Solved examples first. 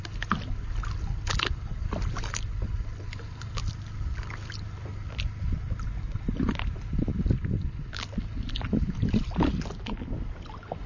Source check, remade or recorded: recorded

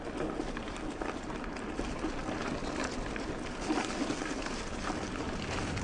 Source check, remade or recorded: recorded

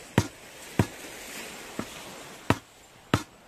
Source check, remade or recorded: recorded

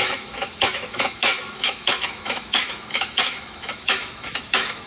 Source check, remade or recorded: remade